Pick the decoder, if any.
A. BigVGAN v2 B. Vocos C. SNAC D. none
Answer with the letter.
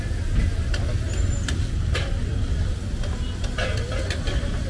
D